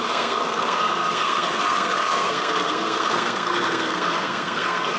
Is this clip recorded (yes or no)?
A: no